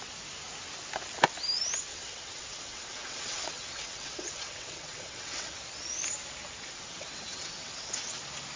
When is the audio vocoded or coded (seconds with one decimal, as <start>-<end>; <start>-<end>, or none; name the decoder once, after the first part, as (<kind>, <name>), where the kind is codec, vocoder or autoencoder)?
1.9-5.6 (vocoder, WaveNeXt); 6.6-8.2